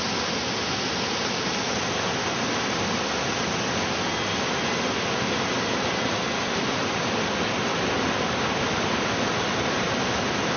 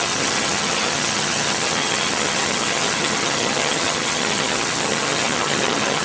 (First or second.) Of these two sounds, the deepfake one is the second